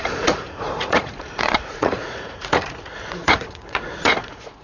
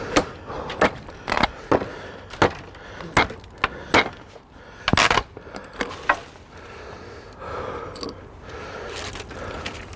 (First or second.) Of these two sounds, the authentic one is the second